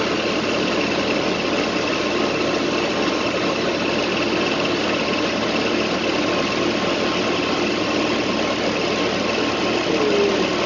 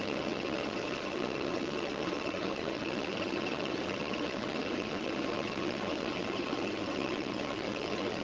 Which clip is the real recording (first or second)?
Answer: first